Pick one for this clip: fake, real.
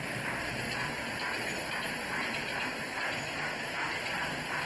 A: real